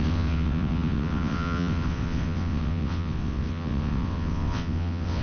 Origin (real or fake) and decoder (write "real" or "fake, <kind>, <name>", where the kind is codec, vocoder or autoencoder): fake, vocoder, WaveNeXt